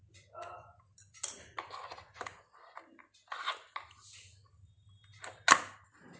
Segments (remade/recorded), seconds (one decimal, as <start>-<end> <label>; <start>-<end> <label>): 0.0-6.2 recorded